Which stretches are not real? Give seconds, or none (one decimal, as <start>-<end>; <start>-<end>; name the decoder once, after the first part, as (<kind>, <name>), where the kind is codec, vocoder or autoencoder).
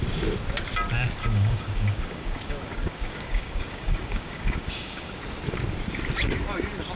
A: 1.2-5.2 (codec, DAC)